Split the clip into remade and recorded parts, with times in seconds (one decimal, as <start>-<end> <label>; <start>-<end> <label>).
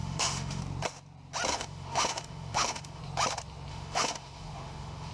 0.0-0.6 remade; 0.6-1.5 recorded; 1.5-3.0 remade; 3.0-3.7 recorded; 3.7-5.1 remade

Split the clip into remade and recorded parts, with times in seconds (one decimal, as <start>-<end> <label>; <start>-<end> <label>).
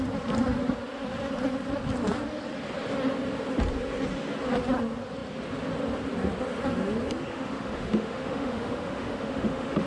0.0-7.3 recorded; 7.3-9.9 remade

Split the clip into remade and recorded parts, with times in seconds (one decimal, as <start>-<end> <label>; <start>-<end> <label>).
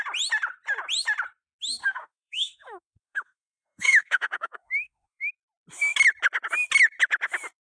0.0-1.8 recorded; 1.8-5.3 remade; 5.3-7.6 recorded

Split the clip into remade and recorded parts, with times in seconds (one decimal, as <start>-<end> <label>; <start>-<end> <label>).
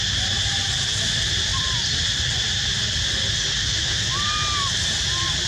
0.0-3.6 recorded; 3.6-4.1 remade; 4.1-5.5 recorded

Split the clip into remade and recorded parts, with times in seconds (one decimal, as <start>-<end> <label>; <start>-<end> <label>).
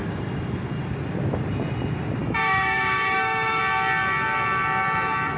0.0-2.2 recorded; 2.2-3.6 remade; 3.6-5.4 recorded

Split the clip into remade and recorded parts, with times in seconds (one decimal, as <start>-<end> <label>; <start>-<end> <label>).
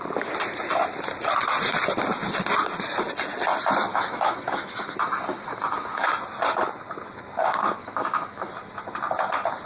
0.0-3.9 recorded; 3.9-6.1 remade; 6.1-7.8 recorded; 7.8-8.5 remade; 8.5-9.7 recorded